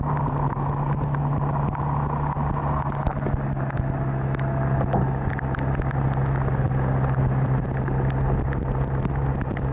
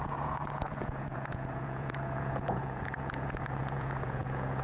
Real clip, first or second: first